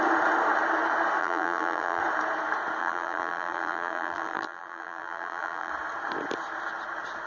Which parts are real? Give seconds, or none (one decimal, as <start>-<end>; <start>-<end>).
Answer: 0.0-1.2; 2.0-2.8; 5.7-7.3